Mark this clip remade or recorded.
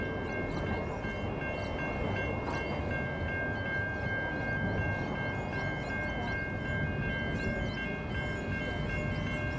recorded